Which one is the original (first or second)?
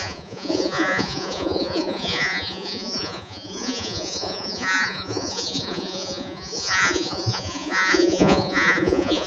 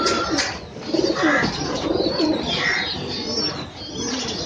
second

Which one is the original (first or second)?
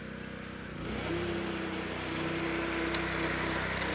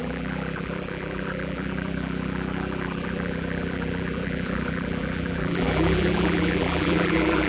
first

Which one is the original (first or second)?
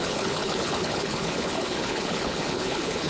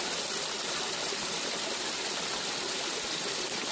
second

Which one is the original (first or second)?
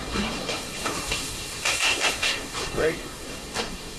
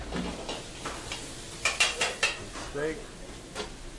second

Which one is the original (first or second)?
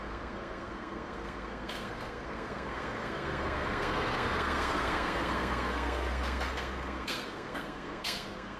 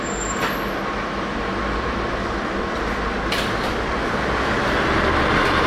second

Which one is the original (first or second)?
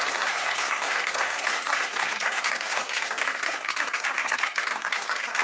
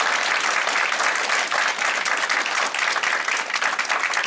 second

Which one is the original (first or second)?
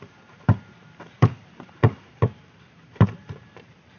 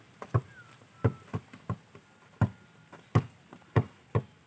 second